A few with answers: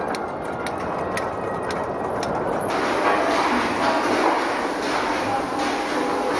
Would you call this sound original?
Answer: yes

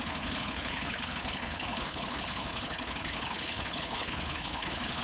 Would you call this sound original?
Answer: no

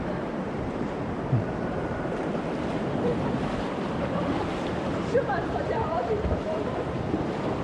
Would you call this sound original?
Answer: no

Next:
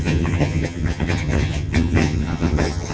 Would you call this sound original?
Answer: no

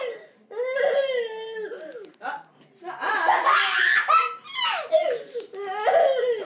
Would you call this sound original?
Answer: yes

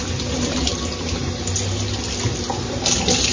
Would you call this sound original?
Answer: yes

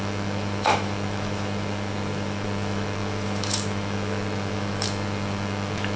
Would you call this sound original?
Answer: no